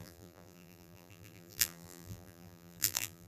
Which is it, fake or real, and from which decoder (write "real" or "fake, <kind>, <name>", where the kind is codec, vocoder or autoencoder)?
fake, vocoder, BigVGAN v2